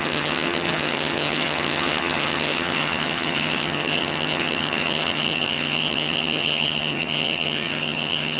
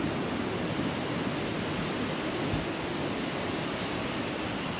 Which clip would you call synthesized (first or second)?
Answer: first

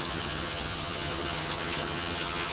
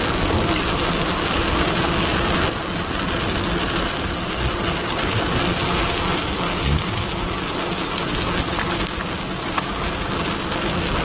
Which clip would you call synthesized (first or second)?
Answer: first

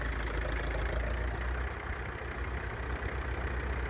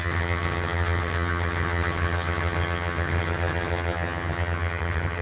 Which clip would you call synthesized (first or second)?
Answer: second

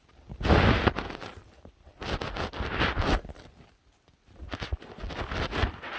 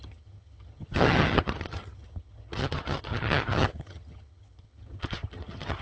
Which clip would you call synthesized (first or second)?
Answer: second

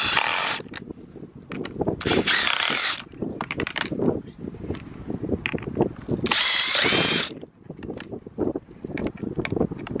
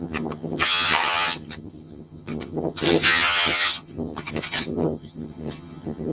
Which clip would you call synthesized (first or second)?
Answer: second